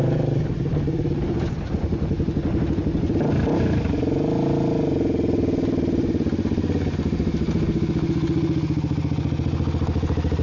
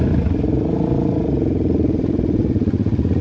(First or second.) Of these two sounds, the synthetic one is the second